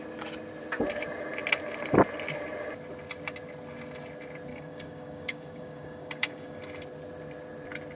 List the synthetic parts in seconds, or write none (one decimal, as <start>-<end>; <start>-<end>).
4.5-6.6